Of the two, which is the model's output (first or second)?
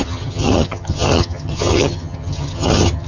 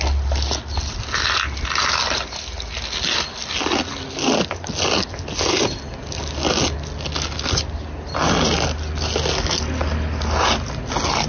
first